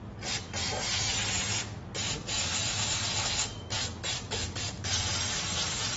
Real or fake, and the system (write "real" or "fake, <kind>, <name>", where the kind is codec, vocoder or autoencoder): real